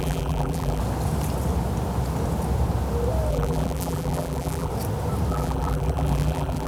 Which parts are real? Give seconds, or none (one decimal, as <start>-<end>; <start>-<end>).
0.8-3.3; 4.7-5.3